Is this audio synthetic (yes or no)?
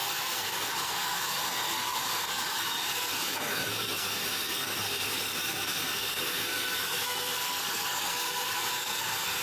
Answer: yes